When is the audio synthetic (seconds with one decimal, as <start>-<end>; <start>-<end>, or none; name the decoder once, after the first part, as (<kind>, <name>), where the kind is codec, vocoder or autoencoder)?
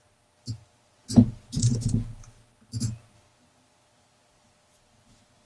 none